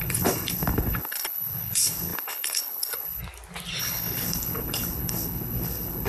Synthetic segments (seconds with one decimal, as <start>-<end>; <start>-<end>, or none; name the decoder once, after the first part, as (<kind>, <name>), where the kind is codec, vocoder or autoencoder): 0.0-3.2 (codec, HILCodec); 3.8-6.1